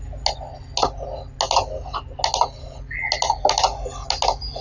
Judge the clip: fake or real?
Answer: real